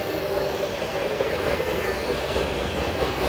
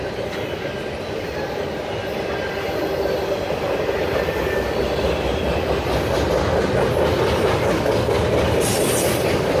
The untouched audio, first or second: second